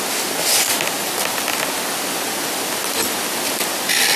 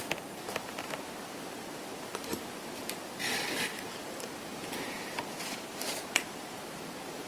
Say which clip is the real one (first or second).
first